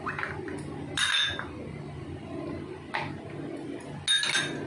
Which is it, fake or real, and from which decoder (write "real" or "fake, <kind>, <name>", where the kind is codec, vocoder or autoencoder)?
real